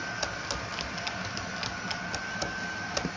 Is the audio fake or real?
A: real